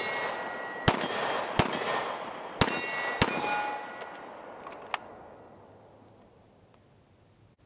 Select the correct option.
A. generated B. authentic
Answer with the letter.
B